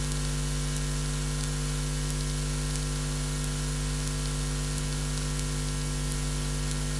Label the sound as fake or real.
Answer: real